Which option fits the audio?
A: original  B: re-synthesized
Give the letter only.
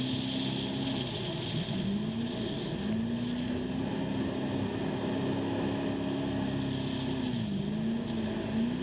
A